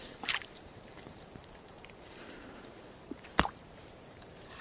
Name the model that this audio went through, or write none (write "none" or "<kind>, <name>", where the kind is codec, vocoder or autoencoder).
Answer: vocoder, BigVGAN v2